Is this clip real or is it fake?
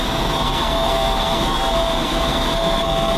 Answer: fake